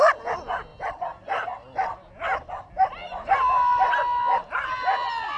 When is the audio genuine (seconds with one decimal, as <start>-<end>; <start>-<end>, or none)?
0.0-5.4